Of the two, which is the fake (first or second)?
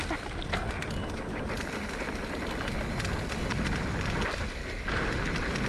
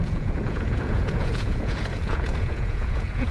second